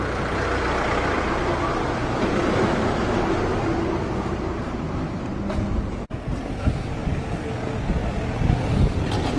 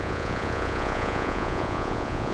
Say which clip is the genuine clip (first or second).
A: first